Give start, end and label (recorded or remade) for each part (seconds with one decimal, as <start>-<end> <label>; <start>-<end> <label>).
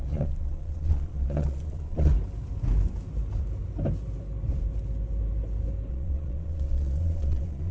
0.0-2.1 remade; 2.1-5.9 recorded; 5.9-7.7 remade